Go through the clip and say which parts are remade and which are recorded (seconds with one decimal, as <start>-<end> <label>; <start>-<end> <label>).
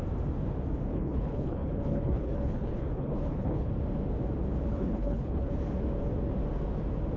0.0-0.9 recorded; 0.9-3.7 remade; 3.7-4.7 recorded; 4.7-5.5 remade; 5.5-7.2 recorded